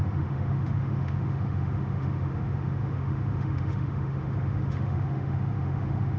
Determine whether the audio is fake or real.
fake